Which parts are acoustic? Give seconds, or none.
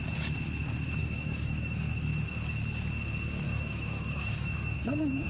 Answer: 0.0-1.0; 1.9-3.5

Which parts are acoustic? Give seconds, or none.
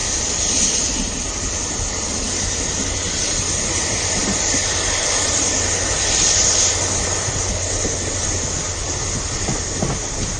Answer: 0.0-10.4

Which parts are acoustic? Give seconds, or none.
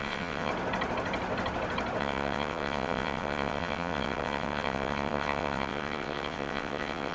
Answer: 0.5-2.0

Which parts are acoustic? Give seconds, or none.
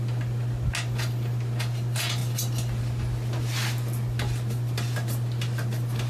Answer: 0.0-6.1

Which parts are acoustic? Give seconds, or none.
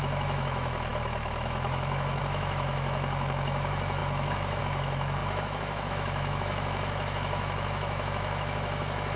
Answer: none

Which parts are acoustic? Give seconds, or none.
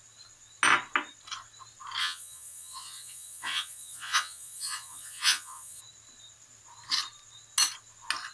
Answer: 0.0-2.0; 5.8-8.3